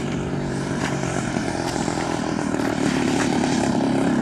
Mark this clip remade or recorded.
remade